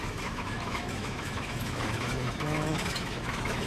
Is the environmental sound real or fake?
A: fake